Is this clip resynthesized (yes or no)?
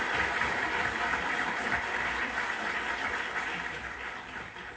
yes